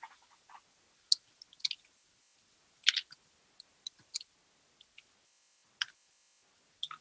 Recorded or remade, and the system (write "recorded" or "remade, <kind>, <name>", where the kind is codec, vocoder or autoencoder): recorded